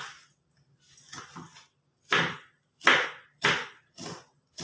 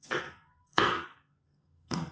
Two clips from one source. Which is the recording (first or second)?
first